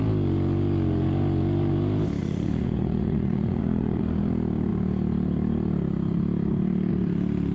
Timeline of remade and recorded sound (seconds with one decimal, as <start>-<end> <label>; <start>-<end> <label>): 0.0-2.2 recorded; 2.2-4.0 remade; 4.0-7.5 recorded